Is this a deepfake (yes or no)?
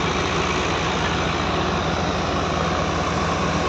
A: no